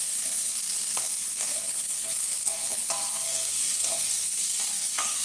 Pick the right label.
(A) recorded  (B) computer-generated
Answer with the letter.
B